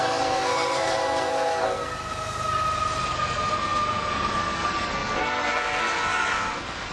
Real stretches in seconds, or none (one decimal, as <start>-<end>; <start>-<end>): 1.9-3.1